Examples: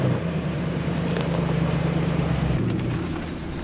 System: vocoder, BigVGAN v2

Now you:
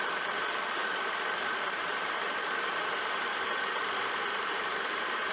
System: vocoder, BigVGAN v2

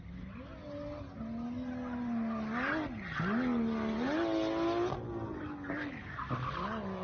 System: none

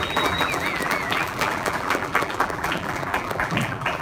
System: vocoder, BigVGAN v2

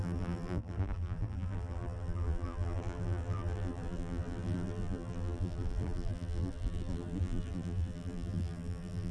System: vocoder, BigVGAN v2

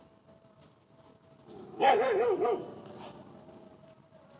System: none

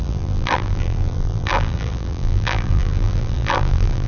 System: vocoder, BigVGAN v2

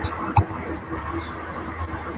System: vocoder, BigVGAN v2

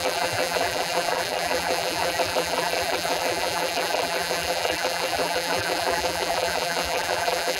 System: vocoder, BigVGAN v2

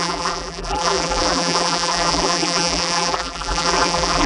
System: vocoder, BigVGAN v2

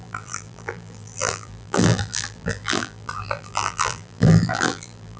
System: vocoder, BigVGAN v2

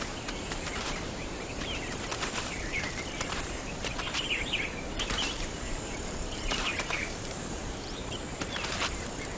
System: vocoder, BigVGAN v2